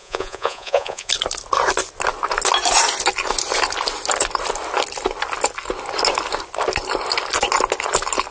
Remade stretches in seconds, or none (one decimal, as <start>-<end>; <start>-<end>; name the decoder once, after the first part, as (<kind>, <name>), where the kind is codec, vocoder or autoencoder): 0.0-1.1 (vocoder, Vocos)